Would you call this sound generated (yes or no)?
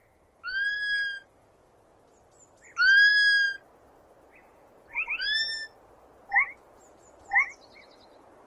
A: no